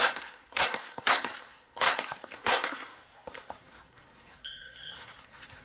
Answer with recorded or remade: remade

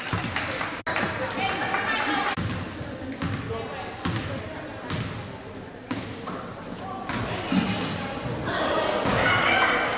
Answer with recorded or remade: recorded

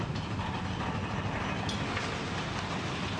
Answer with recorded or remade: recorded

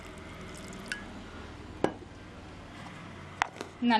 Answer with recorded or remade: recorded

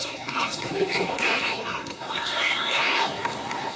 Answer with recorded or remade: remade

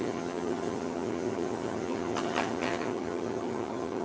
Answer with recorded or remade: remade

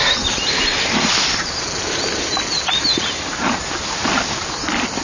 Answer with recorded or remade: recorded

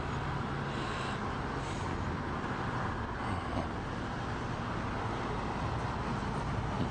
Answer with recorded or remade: recorded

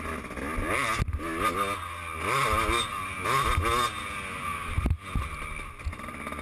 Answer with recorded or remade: recorded